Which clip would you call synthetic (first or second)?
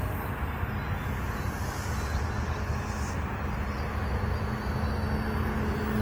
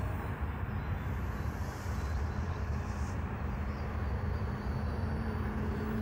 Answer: second